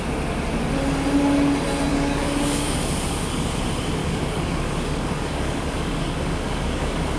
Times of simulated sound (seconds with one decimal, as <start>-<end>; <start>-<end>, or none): 1.9-3.6; 4.0-7.2